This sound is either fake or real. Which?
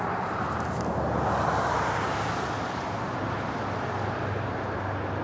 real